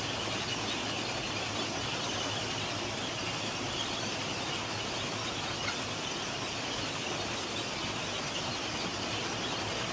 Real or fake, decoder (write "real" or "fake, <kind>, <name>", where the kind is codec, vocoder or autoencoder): real